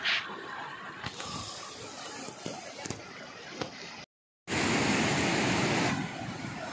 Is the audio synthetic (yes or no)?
no